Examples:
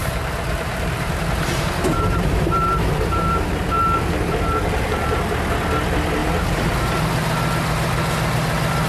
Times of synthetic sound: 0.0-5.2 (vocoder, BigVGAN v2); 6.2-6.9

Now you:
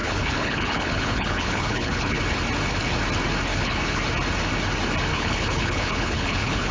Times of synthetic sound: 0.0-2.2 (codec, HILCodec); 3.5-4.0; 5.1-6.7

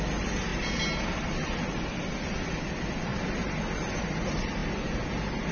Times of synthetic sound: none

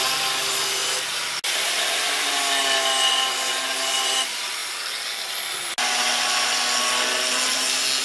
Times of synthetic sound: none

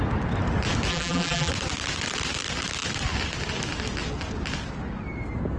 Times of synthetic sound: 0.9-1.5 (vocoder, BigVGAN v2)